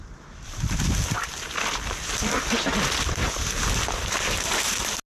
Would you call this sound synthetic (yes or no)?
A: no